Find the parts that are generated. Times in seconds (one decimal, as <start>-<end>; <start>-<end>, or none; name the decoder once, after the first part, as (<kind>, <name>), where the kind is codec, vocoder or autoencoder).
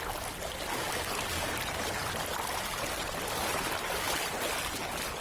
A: 0.7-1.5 (codec, DAC)